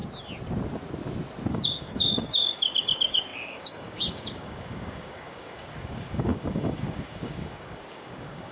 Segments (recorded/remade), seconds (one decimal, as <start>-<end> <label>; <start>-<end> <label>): 0.0-1.5 recorded; 1.5-8.5 remade